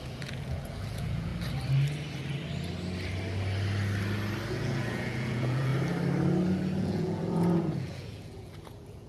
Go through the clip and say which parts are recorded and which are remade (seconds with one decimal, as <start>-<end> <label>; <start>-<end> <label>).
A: 0.0-1.3 remade; 1.3-4.5 recorded; 4.5-5.7 remade; 5.7-6.8 recorded; 6.8-9.1 remade